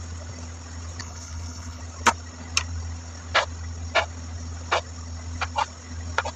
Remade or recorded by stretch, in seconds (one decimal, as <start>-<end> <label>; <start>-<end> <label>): 0.0-1.0 recorded; 1.0-1.8 remade; 1.8-6.4 recorded